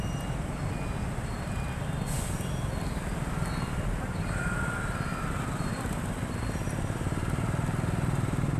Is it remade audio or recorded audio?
recorded